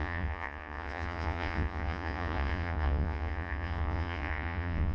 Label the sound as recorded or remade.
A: remade